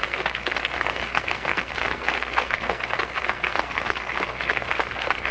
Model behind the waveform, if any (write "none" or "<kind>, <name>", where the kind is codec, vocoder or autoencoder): codec, SNAC